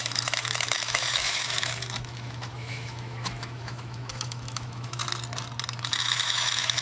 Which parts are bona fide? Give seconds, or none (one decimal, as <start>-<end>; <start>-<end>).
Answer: 5.0-5.8